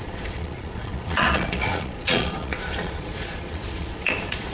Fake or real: fake